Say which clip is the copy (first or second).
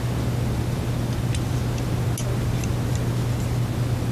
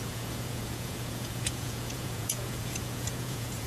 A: second